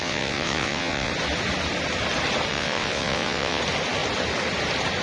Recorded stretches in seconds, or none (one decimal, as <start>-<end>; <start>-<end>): 1.1-2.5; 3.6-5.0